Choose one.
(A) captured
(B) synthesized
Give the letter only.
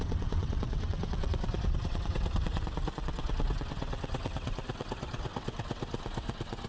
B